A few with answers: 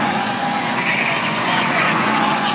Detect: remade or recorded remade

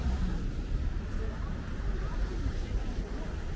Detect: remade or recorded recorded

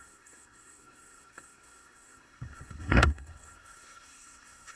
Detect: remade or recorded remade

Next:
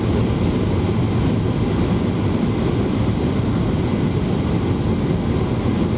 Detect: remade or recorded recorded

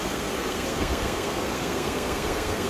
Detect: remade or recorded remade